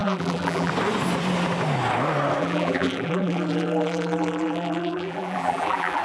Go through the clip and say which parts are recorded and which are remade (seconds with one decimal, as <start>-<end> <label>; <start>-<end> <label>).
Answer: 0.0-0.7 remade; 0.7-2.4 recorded; 2.4-6.0 remade